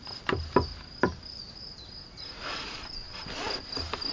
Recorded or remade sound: recorded